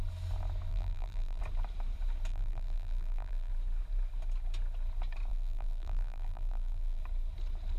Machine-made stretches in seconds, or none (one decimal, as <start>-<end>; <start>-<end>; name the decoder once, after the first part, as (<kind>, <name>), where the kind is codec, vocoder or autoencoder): 0.7-1.4 (vocoder, BigVGAN v2); 2.3-3.5; 5.3-7.0